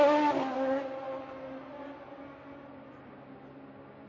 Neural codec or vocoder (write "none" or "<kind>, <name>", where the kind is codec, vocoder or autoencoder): none